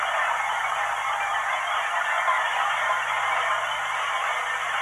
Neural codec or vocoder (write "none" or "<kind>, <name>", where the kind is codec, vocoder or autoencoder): vocoder, BigVGAN v2